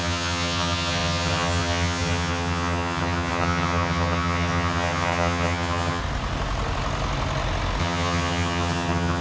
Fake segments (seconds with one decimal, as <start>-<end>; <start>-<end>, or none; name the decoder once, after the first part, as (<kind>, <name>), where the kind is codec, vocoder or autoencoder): 0.0-6.0 (vocoder, HiFi-GAN); 7.8-9.2